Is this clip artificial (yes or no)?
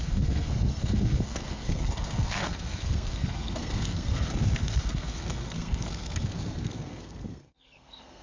yes